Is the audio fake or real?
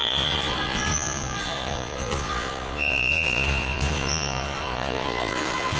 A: fake